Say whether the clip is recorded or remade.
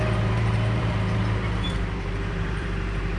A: remade